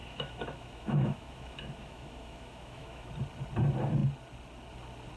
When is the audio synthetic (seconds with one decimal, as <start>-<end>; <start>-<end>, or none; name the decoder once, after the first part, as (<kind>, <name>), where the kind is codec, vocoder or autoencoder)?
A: 0.0-3.1 (autoencoder, DAC-VAE)